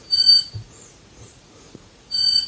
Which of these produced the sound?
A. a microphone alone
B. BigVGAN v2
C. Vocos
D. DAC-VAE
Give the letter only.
C